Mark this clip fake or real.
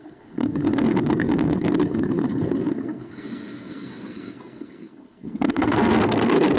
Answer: fake